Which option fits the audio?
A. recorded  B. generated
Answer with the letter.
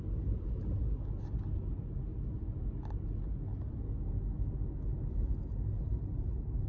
A